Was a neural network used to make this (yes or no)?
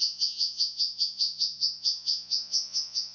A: yes